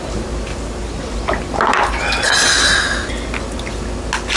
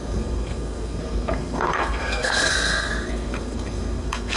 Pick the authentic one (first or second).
first